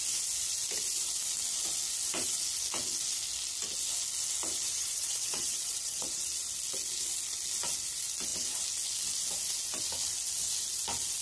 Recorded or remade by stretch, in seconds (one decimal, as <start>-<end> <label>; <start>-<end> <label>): 0.0-4.8 recorded; 4.8-6.2 remade; 6.2-11.2 recorded